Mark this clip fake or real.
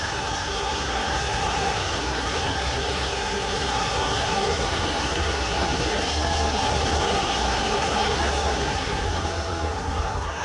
fake